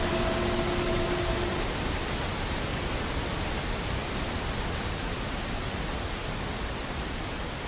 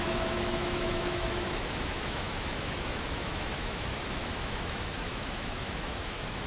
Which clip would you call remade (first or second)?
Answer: second